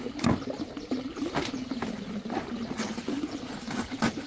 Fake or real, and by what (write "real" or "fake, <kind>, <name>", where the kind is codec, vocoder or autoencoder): real